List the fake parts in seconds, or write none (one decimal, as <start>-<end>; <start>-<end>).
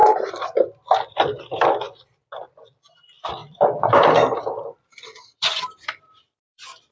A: 0.0-2.3; 3.4-6.9